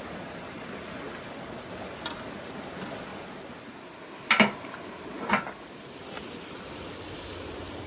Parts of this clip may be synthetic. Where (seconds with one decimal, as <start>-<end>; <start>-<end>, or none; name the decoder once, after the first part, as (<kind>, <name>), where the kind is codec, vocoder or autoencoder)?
none